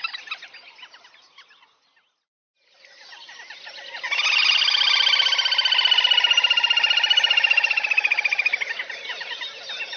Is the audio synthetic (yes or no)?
no